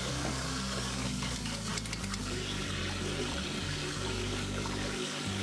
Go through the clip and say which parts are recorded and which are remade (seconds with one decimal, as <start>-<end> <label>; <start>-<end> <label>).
0.0-1.7 remade; 1.7-2.2 recorded; 2.2-2.8 remade; 2.8-3.6 recorded; 3.6-5.4 remade